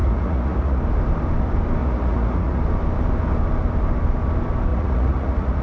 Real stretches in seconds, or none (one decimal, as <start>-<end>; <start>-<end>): 0.8-1.8; 2.6-4.7